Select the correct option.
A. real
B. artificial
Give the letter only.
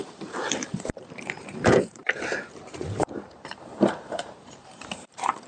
B